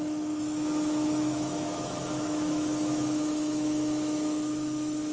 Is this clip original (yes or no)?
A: no